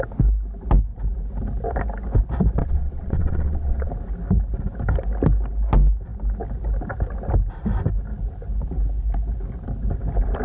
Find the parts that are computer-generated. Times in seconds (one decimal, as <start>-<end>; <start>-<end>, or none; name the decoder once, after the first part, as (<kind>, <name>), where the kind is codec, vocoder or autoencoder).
2.6-3.9 (vocoder, WaveNeXt)